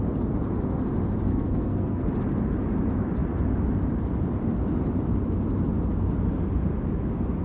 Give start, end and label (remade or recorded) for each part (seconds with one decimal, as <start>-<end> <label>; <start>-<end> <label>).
0.0-1.3 recorded; 1.3-2.1 remade; 2.1-7.4 recorded